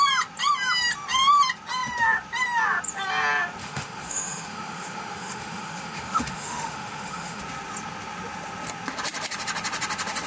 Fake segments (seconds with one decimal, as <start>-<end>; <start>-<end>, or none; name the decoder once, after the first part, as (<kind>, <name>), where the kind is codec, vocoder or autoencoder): 3.6-7.4 (autoencoder, DAC-VAE)